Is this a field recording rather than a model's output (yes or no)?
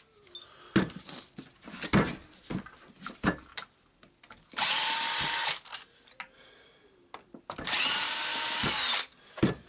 yes